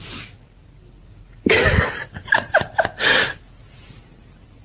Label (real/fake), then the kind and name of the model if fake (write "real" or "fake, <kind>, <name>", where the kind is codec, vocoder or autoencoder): fake, vocoder, BigVGAN v2